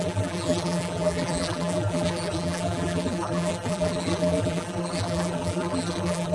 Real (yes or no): no